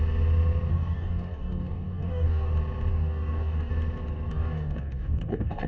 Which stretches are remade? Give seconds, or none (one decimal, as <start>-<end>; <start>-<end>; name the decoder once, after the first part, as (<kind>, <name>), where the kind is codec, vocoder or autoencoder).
0.7-2.5 (codec, DAC); 2.9-3.7; 4.3-5.7